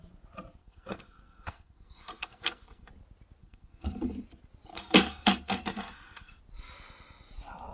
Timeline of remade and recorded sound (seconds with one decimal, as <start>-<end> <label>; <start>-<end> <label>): 0.0-0.6 recorded; 0.6-2.9 remade; 2.9-3.4 recorded; 3.4-4.0 remade; 4.0-4.7 recorded; 4.7-6.4 remade; 6.4-7.7 recorded